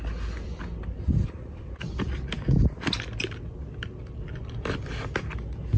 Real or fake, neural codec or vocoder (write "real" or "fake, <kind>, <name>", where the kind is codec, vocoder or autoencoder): real